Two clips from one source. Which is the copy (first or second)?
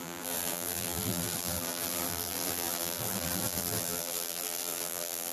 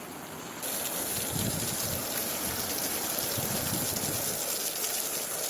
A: first